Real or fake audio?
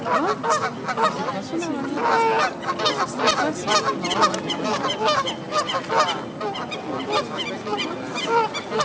real